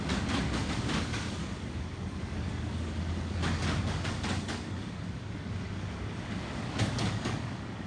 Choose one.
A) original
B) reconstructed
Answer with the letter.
B